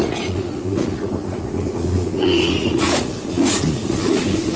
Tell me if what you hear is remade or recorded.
remade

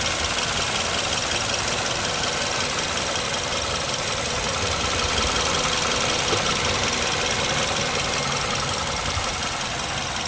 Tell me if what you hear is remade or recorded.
recorded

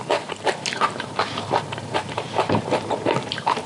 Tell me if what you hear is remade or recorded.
remade